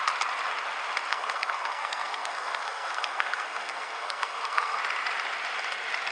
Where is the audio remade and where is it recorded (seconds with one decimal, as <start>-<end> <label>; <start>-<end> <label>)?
0.0-1.1 recorded; 1.1-4.8 remade; 4.8-6.1 recorded